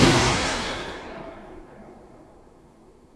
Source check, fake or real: fake